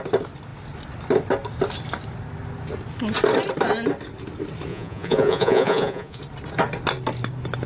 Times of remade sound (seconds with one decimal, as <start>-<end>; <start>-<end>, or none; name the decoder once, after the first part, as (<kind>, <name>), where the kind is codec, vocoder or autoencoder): 4.7-6.2 (vocoder, Vocos)